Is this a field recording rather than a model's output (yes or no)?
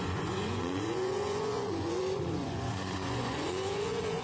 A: no